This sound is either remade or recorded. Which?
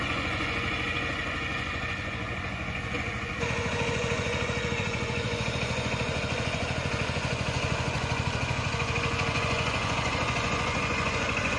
remade